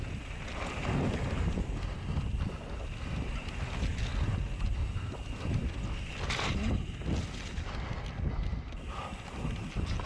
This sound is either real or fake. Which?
real